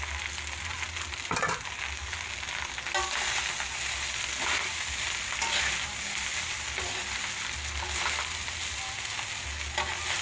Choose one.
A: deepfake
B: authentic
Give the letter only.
B